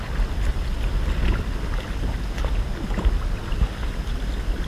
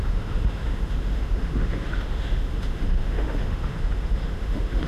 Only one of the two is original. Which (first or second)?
first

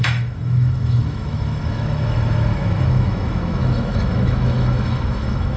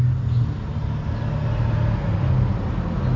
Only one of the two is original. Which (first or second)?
second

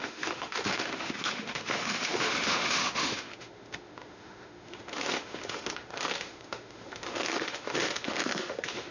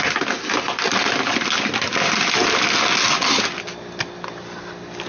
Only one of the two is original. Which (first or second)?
second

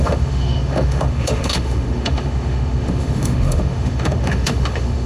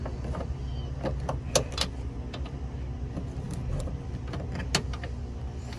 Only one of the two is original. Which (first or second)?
second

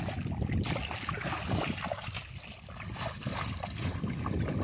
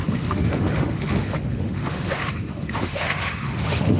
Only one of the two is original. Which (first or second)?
first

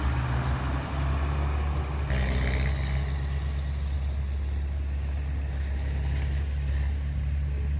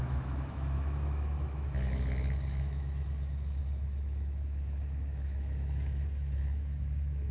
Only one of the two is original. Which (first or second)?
first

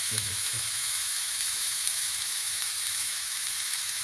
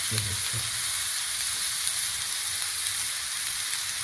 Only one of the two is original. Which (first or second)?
second